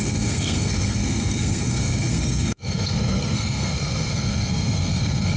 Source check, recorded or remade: remade